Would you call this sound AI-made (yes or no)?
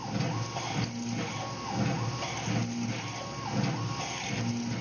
no